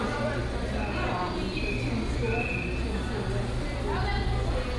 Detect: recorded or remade recorded